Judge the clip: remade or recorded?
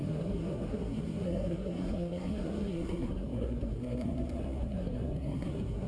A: remade